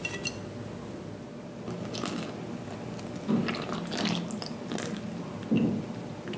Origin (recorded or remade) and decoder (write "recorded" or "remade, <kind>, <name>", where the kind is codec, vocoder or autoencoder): recorded